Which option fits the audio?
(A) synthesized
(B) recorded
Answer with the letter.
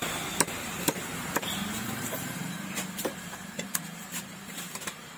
A